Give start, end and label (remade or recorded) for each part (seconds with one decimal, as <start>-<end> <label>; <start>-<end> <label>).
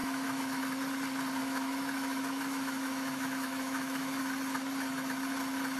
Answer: 0.0-0.6 remade; 0.6-1.4 recorded; 1.4-4.2 remade; 4.2-5.8 recorded